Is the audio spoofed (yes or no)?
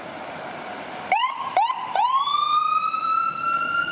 yes